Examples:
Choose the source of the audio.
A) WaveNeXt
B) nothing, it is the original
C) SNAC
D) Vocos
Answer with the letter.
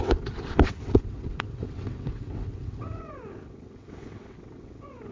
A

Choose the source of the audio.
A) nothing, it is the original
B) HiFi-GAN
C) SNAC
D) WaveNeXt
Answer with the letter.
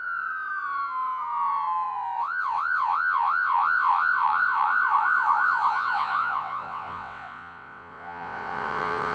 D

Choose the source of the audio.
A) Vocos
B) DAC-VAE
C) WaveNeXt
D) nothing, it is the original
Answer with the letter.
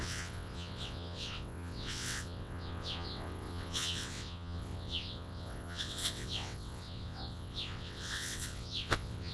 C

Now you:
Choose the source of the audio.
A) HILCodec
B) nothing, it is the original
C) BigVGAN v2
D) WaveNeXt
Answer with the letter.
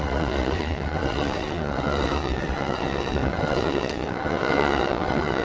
D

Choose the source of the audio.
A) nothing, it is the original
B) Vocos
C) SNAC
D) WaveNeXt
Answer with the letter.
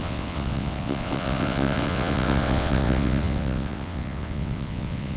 D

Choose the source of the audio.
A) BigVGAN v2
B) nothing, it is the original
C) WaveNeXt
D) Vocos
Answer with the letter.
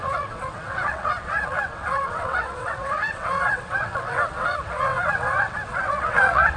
C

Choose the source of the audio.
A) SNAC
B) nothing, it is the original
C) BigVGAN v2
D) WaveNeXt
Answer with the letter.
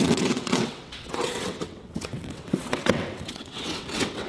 D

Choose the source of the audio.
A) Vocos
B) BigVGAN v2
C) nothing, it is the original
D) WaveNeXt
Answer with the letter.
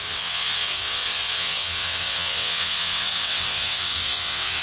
D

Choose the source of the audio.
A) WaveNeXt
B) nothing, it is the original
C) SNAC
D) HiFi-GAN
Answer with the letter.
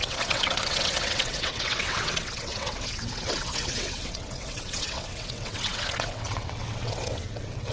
A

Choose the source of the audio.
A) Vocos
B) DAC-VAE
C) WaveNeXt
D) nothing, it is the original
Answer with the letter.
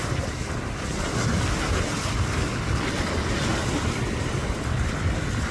D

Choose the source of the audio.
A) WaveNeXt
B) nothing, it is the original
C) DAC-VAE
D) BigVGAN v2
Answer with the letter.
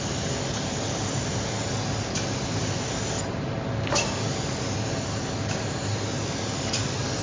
B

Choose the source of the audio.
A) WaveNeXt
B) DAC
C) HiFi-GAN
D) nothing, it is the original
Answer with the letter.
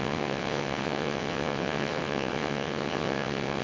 A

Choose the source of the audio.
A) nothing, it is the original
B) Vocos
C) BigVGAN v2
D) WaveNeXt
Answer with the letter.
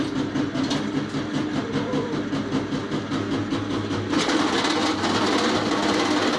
A